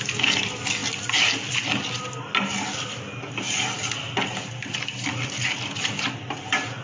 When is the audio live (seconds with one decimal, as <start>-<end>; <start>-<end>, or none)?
0.0-6.8